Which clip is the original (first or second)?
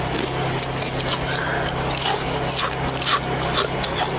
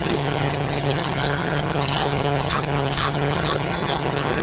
first